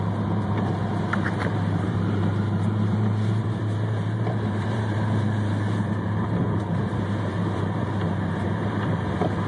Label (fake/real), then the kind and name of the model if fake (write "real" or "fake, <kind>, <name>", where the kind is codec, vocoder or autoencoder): fake, vocoder, BigVGAN v2